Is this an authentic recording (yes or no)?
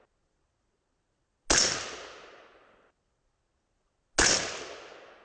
yes